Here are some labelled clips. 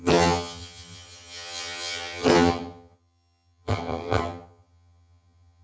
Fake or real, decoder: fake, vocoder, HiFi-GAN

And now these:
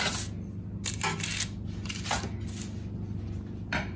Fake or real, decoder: real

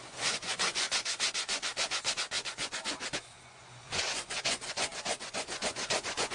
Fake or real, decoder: fake, vocoder, Vocos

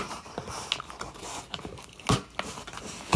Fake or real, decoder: real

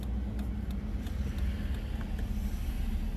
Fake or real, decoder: real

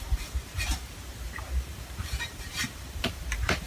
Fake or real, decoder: fake, vocoder, BigVGAN v2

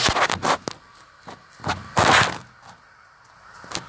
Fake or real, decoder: real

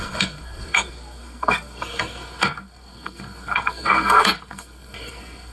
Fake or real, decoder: fake, codec, SNAC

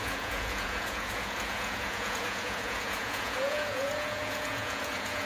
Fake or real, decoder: fake, vocoder, Vocos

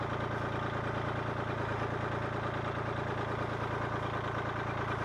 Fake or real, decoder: real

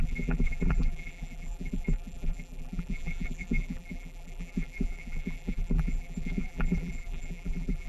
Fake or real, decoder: fake, vocoder, BigVGAN v2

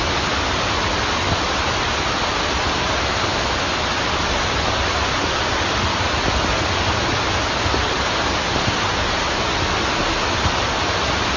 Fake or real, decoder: real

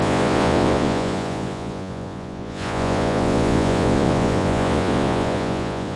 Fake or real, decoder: fake, vocoder, Vocos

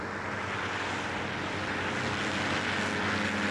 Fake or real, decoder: real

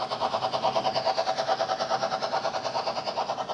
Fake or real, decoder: real